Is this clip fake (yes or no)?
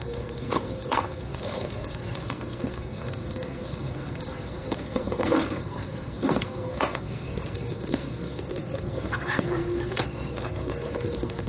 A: yes